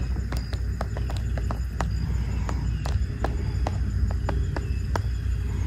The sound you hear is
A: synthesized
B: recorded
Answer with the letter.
B